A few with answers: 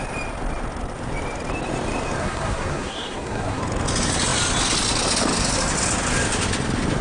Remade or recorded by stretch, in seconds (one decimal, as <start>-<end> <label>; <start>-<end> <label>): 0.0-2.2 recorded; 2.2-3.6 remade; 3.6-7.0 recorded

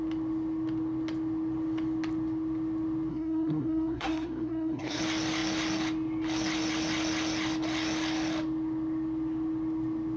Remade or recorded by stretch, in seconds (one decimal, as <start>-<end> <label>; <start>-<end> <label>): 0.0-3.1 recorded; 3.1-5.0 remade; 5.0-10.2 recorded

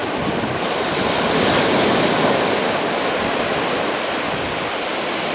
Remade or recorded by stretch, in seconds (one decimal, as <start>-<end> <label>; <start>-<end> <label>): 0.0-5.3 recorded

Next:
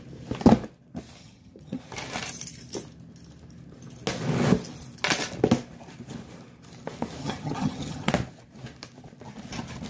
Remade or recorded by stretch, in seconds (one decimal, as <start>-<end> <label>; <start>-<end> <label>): 0.0-1.2 recorded; 1.2-1.8 remade; 1.8-7.2 recorded; 7.2-8.1 remade; 8.1-9.9 recorded